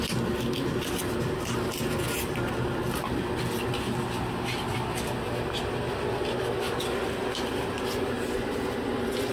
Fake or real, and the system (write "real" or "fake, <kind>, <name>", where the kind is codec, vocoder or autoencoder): real